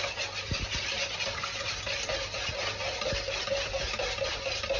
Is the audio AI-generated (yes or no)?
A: no